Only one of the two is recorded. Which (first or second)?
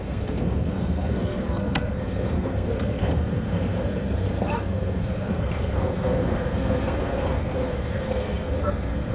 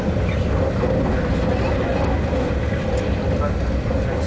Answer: second